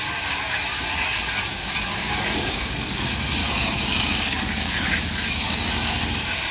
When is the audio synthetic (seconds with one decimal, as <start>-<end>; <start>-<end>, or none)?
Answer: 2.0-3.0; 3.4-5.9